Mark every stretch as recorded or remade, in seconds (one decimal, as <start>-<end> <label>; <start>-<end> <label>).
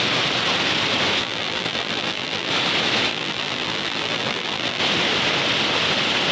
0.0-1.2 recorded; 1.2-2.5 remade; 2.5-3.1 recorded; 3.1-4.8 remade; 4.8-6.3 recorded